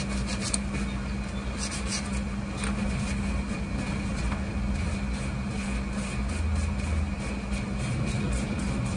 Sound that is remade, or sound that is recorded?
recorded